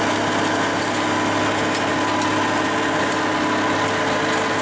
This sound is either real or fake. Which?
real